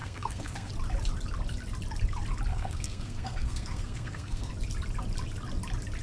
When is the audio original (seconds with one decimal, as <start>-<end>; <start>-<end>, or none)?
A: 0.7-2.5; 4.5-6.0